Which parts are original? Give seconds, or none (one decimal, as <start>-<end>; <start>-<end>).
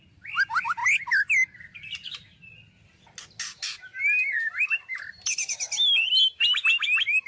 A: 0.0-7.3